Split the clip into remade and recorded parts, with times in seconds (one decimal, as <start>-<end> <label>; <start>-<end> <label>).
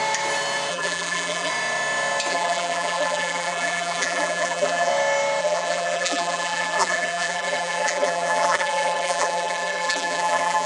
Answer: 0.0-0.7 recorded; 0.7-1.5 remade; 1.5-2.3 recorded; 2.3-4.9 remade; 4.9-5.4 recorded; 5.4-10.7 remade